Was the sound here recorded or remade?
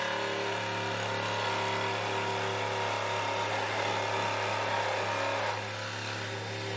recorded